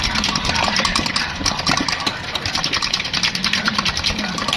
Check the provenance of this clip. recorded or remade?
recorded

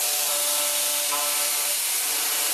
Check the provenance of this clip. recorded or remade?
remade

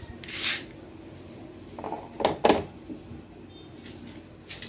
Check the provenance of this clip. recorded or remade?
recorded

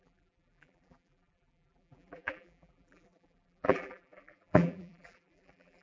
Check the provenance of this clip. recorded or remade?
remade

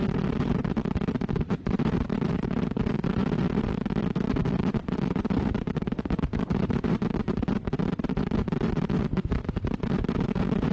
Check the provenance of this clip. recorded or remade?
remade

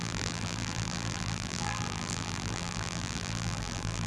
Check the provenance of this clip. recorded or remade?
remade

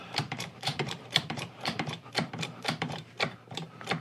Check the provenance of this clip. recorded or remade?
remade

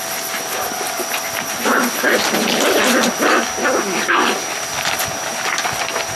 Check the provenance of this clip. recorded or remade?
recorded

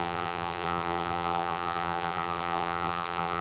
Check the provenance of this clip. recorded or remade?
remade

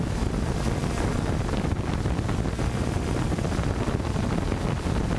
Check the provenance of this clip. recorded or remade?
recorded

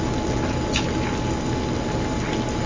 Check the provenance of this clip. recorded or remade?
recorded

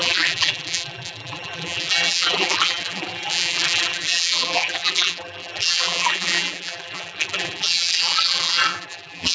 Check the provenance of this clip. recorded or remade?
remade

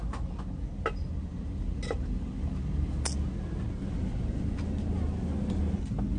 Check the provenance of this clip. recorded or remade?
recorded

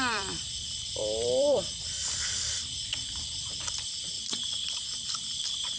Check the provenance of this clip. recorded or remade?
remade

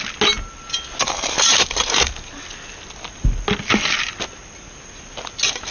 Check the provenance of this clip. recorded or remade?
recorded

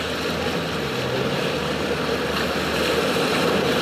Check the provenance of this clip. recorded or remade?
recorded